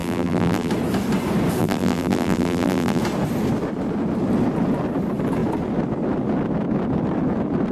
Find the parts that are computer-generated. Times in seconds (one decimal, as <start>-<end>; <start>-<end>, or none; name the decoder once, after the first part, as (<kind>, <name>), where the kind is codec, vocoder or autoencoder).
0.0-0.7 (vocoder, BigVGAN v2); 1.6-3.0